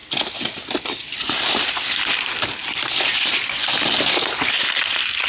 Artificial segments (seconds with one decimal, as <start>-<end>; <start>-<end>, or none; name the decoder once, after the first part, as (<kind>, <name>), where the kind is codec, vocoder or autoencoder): 0.0-1.4 (vocoder, BigVGAN v2)